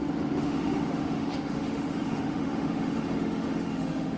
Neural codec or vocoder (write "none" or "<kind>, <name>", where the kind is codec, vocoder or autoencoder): autoencoder, DAC-VAE